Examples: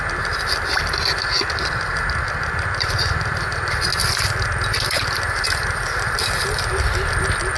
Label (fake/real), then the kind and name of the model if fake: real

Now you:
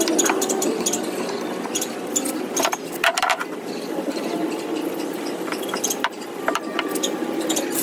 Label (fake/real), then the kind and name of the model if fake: fake, vocoder, BigVGAN v2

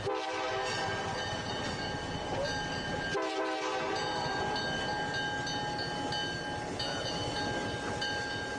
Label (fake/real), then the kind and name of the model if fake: real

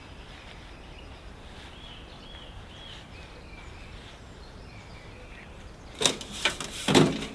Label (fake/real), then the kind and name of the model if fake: real